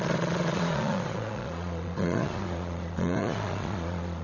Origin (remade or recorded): remade